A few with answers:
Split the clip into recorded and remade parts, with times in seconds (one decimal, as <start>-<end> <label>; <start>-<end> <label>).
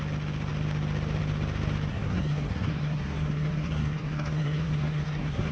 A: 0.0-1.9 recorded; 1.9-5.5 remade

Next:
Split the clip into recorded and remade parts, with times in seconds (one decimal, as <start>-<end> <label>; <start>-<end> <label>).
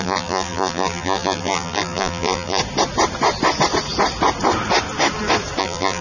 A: 0.0-2.6 remade; 2.6-5.6 recorded; 5.6-6.0 remade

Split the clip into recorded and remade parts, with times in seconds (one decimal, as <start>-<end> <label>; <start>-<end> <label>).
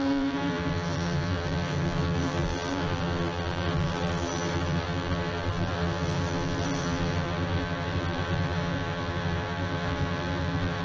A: 0.0-10.8 remade